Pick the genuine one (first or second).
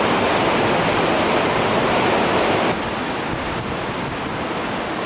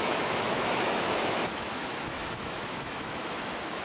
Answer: first